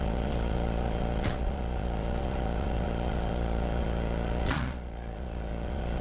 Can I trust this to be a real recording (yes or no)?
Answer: no